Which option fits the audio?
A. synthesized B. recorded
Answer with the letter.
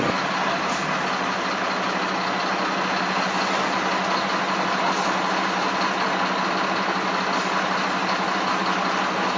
B